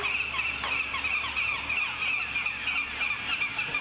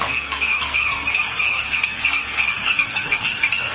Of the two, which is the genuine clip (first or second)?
first